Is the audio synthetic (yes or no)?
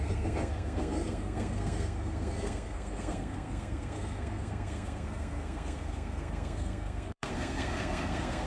yes